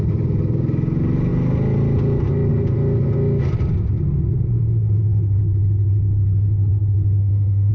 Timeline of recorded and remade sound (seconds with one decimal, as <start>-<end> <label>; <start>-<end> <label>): 0.0-7.2 recorded; 7.2-7.7 remade